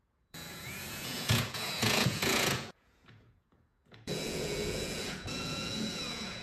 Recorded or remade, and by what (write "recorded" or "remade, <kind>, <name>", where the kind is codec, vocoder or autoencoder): remade, vocoder, Vocos